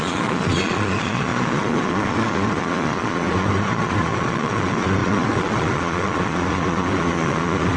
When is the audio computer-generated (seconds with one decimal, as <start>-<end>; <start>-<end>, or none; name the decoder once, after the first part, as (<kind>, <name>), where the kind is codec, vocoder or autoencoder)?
0.0-7.8 (vocoder, Vocos)